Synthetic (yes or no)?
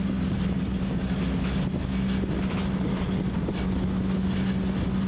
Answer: no